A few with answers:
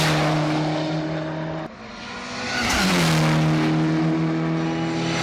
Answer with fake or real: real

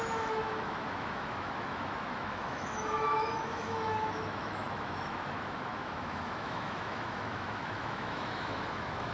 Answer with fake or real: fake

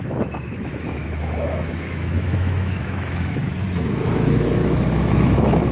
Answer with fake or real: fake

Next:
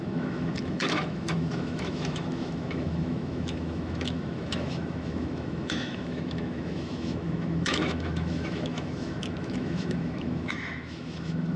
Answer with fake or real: fake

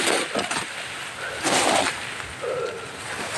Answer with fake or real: real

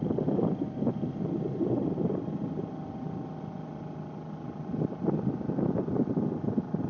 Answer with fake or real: real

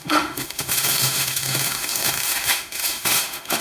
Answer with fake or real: fake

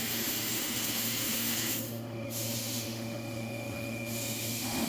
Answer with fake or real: fake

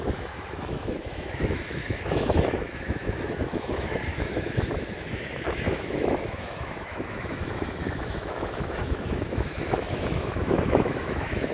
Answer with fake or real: fake